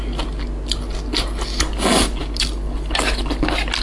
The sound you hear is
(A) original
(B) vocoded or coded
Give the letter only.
A